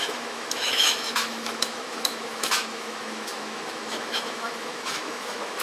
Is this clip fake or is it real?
fake